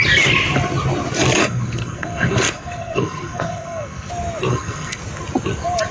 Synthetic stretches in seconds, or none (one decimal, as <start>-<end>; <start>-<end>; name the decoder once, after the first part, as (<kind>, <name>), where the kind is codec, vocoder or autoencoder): 1.4-4.1 (codec, SNAC); 4.5-5.0